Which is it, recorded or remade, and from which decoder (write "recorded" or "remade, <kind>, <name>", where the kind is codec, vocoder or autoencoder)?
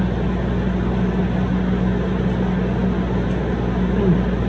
recorded